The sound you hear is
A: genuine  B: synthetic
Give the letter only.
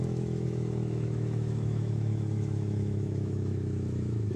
B